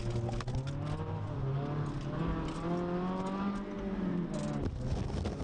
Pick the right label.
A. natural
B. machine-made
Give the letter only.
A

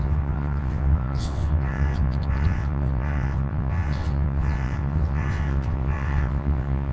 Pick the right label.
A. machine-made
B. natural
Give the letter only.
A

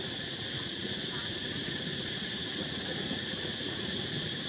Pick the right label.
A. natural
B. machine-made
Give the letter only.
B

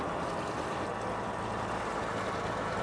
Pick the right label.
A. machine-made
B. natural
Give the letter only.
B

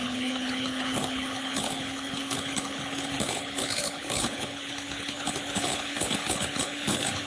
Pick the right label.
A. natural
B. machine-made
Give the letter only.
B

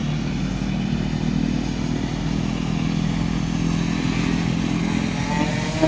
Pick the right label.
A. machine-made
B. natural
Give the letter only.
B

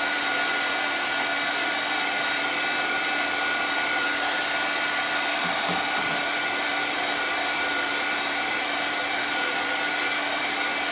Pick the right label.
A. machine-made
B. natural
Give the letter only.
A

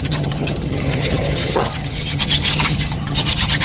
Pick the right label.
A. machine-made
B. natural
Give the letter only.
A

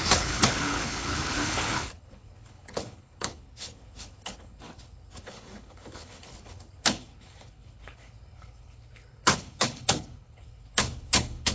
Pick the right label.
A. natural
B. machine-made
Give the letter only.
B